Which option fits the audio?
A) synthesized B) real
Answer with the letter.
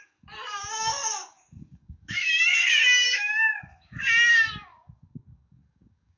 A